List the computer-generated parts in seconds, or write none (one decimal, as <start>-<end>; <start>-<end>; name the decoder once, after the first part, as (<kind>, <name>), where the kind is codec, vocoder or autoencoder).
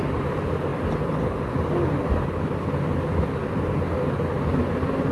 none